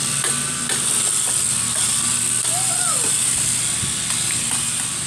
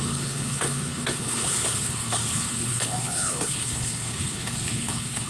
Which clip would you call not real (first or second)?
second